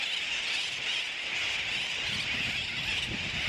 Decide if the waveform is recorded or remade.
recorded